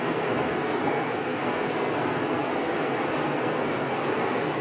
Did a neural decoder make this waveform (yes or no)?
yes